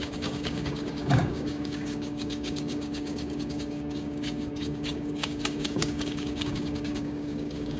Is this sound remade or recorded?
remade